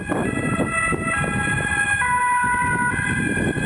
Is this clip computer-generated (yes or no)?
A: no